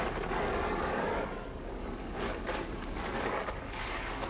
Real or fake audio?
fake